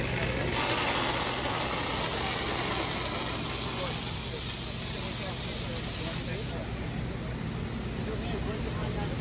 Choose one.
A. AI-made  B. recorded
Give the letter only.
B